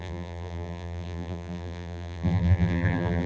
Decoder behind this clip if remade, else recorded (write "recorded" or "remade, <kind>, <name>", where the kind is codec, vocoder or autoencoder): remade, vocoder, BigVGAN v2